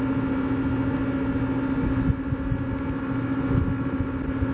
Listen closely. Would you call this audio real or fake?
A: real